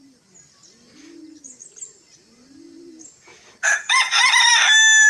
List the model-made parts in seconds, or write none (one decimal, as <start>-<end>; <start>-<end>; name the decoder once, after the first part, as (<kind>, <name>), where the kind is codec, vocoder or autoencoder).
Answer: 3.3-4.3 (vocoder, Vocos)